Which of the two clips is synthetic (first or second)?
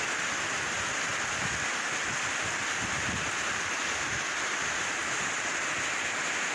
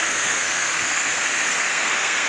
second